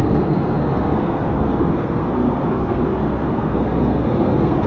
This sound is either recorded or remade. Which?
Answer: remade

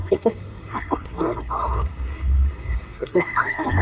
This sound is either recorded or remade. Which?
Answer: remade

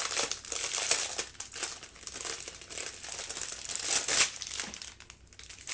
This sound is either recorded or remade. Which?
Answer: recorded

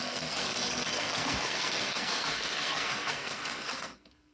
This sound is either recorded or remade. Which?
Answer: remade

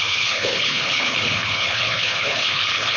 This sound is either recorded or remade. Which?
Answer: remade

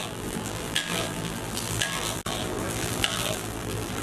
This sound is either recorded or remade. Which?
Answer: remade